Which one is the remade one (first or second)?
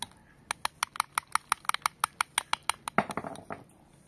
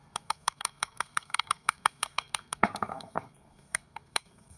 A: second